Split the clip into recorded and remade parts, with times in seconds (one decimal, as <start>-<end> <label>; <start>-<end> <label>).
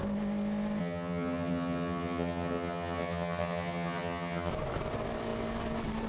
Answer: 0.0-0.8 recorded; 0.8-4.5 remade; 4.5-6.1 recorded